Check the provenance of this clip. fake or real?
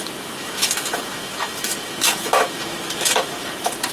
fake